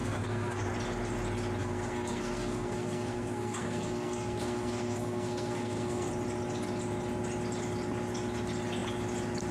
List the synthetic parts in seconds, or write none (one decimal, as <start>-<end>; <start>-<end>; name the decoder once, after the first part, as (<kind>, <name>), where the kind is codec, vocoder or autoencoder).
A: 0.0-0.6 (codec, SNAC); 1.6-6.1

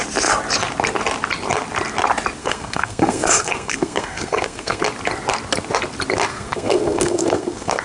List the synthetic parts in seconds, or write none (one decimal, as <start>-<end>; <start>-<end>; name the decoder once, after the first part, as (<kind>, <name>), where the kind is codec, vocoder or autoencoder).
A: 2.4-4.8 (codec, SNAC); 6.3-7.8

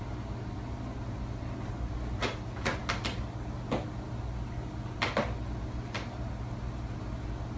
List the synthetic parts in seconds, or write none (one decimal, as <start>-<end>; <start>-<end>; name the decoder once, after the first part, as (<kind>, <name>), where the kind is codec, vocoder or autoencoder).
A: none

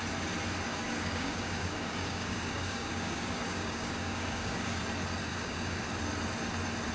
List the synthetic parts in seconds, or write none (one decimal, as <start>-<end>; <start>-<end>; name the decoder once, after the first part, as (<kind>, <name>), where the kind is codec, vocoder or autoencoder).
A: 0.7-4.8 (codec, DAC); 5.3-5.8

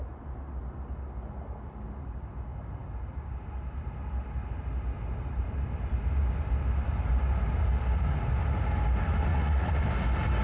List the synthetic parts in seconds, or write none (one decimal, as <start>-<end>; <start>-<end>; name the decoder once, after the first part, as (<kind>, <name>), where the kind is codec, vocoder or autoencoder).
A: 9.3-9.8 (vocoder, Vocos)

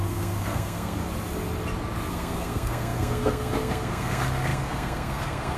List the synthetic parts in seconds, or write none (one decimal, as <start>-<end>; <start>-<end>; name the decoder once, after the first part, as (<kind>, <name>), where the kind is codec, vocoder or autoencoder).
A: 0.0-1.0 (codec, SNAC); 2.1-5.6